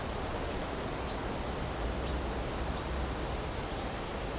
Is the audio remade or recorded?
recorded